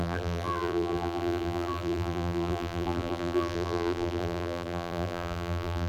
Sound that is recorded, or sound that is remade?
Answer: remade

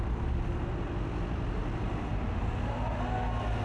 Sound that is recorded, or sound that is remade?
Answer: recorded